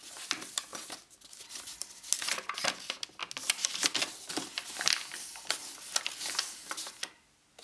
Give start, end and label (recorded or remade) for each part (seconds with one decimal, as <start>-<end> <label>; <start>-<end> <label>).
0.0-7.6 recorded